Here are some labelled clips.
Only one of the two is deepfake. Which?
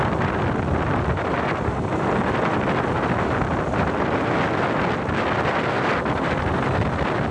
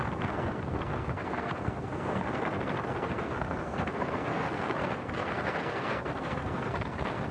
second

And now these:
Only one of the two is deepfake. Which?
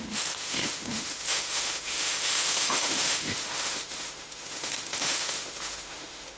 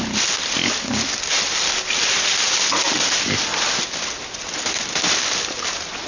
first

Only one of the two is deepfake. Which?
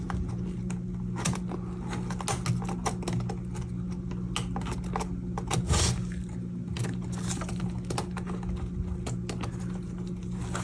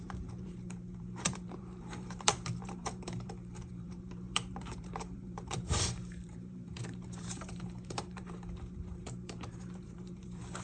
second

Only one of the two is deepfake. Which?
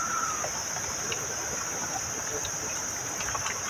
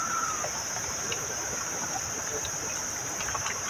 second